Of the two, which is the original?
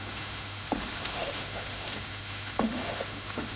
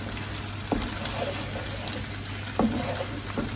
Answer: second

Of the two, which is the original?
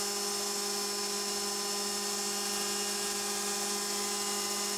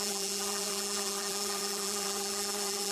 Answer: first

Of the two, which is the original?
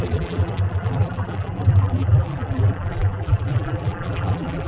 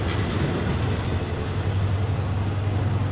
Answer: second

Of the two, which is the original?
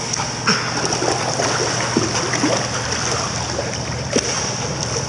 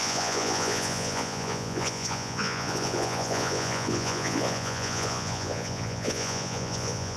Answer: first